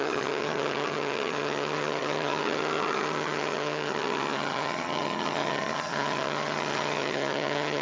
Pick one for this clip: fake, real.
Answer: fake